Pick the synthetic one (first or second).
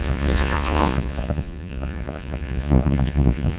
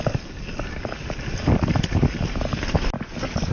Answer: first